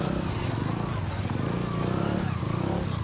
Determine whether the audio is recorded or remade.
recorded